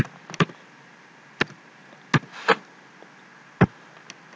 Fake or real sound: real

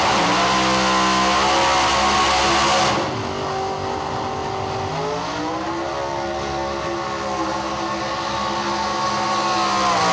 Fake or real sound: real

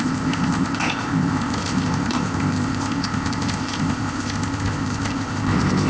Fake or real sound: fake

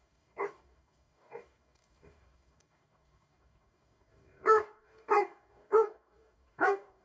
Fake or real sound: fake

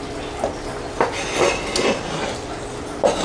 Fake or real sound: real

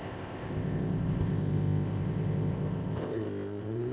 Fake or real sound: fake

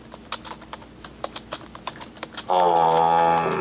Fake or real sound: real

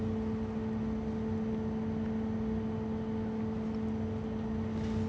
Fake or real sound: real